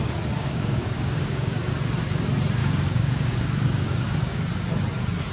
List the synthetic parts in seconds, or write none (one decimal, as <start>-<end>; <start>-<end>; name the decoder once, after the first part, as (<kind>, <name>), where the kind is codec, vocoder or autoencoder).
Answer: 0.4-1.6 (codec, DAC); 2.6-4.4

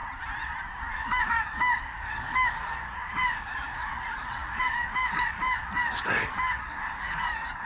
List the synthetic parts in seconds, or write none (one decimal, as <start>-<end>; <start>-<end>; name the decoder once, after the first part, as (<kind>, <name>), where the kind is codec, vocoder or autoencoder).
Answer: 0.9-7.7 (codec, DAC)

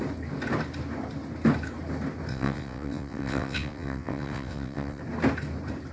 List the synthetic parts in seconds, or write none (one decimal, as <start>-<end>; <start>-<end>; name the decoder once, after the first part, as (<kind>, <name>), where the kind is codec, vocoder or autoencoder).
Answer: 2.3-5.0 (vocoder, WaveNeXt)

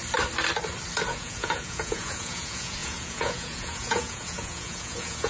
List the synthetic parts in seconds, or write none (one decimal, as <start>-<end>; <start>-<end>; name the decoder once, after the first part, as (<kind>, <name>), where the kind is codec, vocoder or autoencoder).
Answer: 1.1-5.3 (vocoder, Vocos)

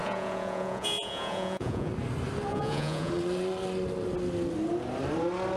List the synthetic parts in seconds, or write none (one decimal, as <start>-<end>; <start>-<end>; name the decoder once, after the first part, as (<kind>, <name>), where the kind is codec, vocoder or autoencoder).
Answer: 0.0-1.9 (vocoder, Vocos); 2.5-3.1

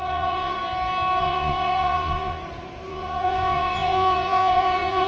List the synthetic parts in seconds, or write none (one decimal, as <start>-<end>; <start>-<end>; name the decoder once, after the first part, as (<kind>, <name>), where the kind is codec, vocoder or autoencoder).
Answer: 0.0-0.6 (vocoder, Vocos); 1.2-2.4; 2.9-5.1